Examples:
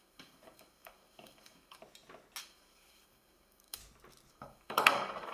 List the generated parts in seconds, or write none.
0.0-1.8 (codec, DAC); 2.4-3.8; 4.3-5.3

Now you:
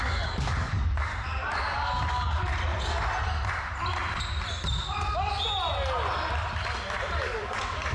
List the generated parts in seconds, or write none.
0.0-1.1 (codec, DAC); 2.1-2.5; 7.2-7.9

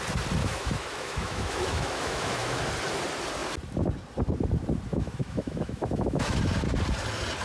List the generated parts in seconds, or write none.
0.4-2.6 (autoencoder, DAC-VAE); 4.9-6.4

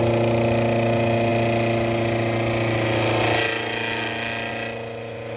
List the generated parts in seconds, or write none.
none

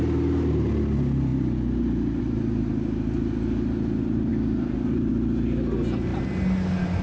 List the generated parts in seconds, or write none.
none

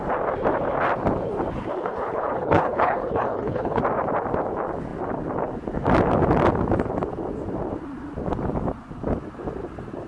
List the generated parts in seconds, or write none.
1.7-3.8 (codec, HILCodec)

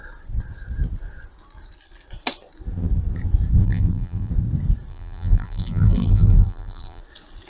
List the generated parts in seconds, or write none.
3.6-4.3 (vocoder, BigVGAN v2); 4.9-7.0